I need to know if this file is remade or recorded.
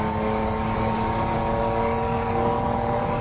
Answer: remade